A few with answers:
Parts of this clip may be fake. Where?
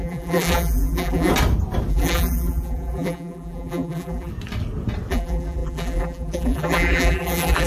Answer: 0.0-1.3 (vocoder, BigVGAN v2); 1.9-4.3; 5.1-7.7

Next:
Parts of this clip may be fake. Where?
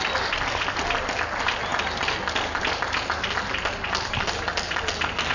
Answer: none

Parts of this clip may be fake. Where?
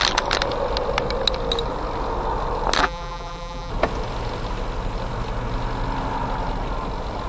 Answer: 2.8-3.7 (vocoder, BigVGAN v2)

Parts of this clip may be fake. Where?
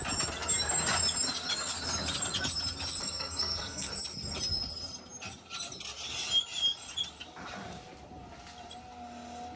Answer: 3.0-3.9 (codec, SNAC)